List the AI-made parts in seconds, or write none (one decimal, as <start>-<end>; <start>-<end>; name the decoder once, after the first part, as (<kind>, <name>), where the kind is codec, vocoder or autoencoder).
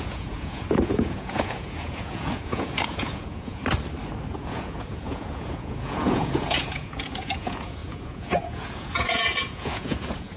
0.0-3.6 (vocoder, Vocos); 4.3-10.4